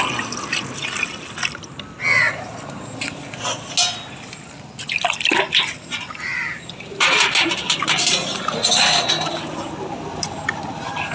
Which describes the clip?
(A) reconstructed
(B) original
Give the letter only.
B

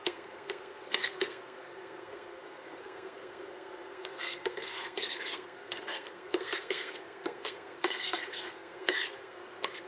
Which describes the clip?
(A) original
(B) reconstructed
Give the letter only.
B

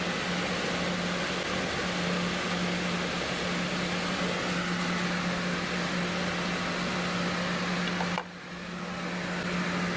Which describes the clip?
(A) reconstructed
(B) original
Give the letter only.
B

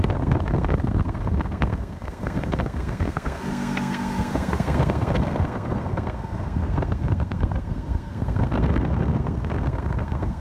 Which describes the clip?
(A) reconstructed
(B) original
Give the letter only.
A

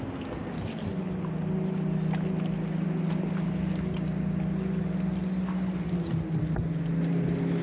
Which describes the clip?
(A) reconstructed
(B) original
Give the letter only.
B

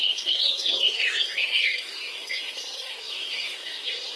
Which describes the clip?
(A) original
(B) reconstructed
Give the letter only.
B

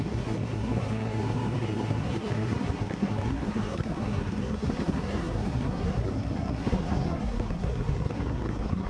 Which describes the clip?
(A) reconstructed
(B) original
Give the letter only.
A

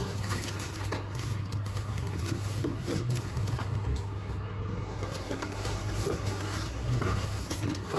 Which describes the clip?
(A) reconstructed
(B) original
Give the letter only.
A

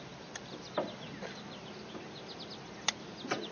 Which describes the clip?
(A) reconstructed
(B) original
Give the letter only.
B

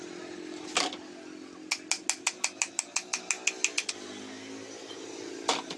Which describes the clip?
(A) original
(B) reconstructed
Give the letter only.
A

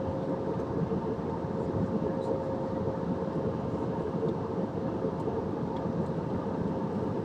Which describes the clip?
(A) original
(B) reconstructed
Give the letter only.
A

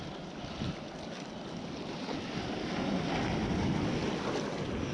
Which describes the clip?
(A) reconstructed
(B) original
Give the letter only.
B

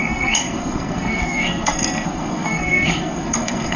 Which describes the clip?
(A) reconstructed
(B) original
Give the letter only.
A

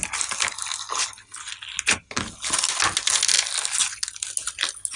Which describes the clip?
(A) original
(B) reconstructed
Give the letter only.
A